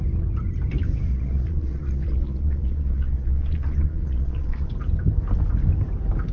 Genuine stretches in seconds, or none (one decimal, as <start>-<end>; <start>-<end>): 0.0-1.1; 4.7-6.3